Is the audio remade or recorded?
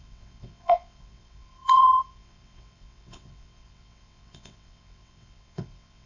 remade